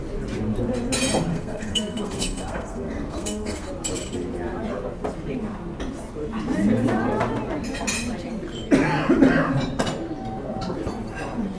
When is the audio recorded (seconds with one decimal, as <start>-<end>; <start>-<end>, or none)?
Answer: 0.0-1.3; 3.7-11.6